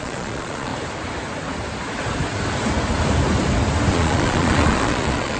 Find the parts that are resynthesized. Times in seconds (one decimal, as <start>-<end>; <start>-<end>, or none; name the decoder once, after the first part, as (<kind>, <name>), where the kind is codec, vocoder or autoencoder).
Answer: 0.0-0.7 (vocoder, Vocos); 3.9-5.4